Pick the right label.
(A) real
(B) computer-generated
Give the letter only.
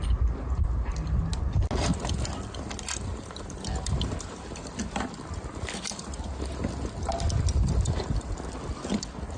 A